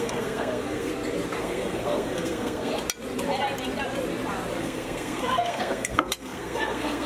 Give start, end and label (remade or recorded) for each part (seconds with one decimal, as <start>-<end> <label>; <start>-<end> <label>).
0.0-0.9 remade; 0.9-1.4 recorded; 1.4-2.7 remade; 2.7-4.6 recorded; 4.6-7.1 remade